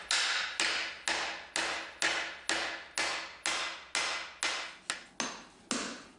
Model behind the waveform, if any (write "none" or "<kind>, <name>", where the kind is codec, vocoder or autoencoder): none